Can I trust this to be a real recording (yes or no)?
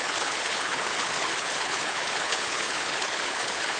no